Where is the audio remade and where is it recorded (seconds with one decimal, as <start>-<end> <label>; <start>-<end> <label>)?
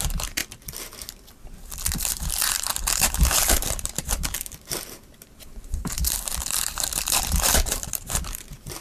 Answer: 0.0-0.4 remade; 0.4-1.9 recorded; 1.9-8.8 remade